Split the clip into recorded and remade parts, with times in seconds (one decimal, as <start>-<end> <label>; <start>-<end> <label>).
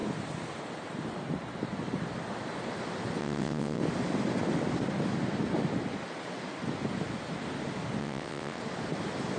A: 0.0-3.2 recorded; 3.2-3.8 remade; 3.8-8.0 recorded; 8.0-8.6 remade; 8.6-9.4 recorded